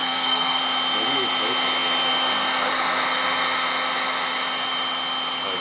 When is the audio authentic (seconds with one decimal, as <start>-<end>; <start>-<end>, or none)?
0.6-5.6